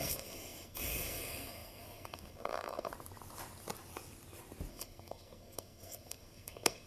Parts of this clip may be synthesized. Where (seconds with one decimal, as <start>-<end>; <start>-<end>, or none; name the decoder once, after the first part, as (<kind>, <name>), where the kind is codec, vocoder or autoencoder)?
0.0-2.9 (codec, SNAC); 4.7-6.9

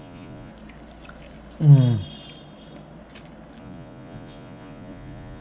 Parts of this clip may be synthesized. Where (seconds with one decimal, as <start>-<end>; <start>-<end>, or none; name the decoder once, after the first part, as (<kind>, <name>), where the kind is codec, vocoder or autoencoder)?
0.0-0.5 (vocoder, Vocos); 3.6-5.4

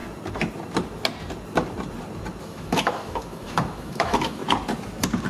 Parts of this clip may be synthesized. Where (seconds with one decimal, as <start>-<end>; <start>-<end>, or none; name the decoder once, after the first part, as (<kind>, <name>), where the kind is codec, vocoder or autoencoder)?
2.4-4.4 (autoencoder, DAC-VAE)